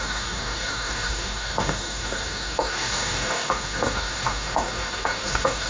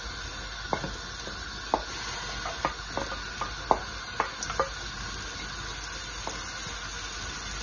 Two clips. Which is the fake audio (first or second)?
first